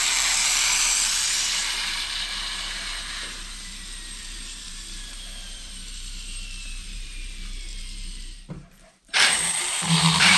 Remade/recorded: remade